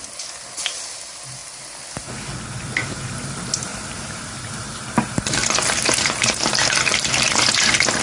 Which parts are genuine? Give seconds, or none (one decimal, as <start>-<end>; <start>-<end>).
0.0-3.7; 7.2-8.0